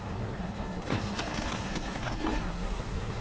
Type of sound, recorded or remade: remade